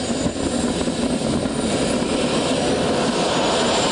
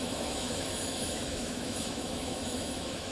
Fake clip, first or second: second